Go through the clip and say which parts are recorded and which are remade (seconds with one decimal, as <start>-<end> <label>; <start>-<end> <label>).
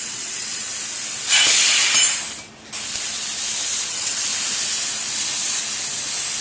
0.0-0.7 remade; 0.7-3.9 recorded; 3.9-4.3 remade; 4.3-6.4 recorded